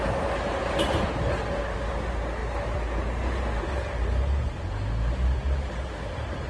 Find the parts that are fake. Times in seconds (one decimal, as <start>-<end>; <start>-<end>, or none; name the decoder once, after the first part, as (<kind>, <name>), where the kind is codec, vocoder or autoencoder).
none